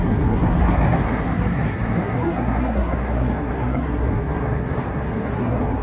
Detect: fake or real fake